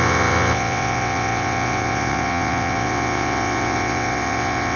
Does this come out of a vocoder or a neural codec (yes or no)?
yes